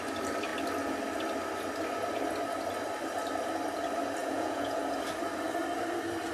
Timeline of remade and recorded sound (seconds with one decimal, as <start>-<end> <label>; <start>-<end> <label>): 0.0-4.2 recorded; 4.2-4.8 remade; 4.8-6.3 recorded